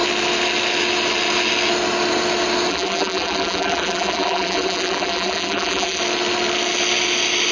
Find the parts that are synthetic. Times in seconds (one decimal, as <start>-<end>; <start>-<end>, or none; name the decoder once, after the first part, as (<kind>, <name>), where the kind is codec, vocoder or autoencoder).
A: 2.7-6.0 (vocoder, BigVGAN v2)

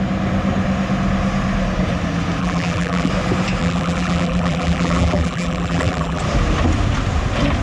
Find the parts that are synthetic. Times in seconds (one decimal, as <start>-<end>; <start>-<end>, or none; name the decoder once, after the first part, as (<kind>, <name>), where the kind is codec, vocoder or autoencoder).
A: 2.4-3.1 (vocoder, BigVGAN v2); 3.6-6.2

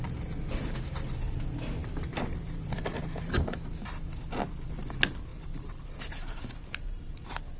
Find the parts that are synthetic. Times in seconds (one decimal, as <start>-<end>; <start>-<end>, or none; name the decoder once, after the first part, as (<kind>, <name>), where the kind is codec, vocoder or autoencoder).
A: 1.8-3.6 (vocoder, BigVGAN v2); 5.3-7.6

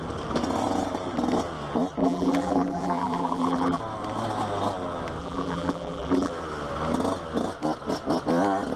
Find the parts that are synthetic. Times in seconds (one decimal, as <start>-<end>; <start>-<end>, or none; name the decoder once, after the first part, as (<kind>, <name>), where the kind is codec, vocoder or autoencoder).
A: 2.0-3.8 (vocoder, BigVGAN v2); 5.2-6.3

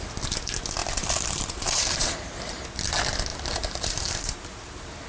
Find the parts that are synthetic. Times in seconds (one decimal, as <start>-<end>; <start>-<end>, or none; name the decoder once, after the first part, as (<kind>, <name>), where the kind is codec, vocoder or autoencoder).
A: 0.8-2.6 (vocoder, BigVGAN v2); 3.3-5.1

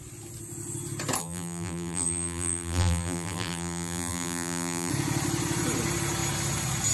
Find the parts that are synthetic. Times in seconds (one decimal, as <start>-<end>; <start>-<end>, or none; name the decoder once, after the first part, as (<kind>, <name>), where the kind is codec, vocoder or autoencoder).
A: 1.2-4.9 (vocoder, BigVGAN v2)

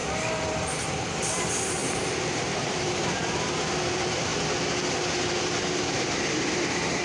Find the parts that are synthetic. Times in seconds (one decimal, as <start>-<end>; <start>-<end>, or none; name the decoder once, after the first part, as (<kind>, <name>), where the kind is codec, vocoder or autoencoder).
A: 0.0-4.3 (vocoder, BigVGAN v2); 5.2-7.0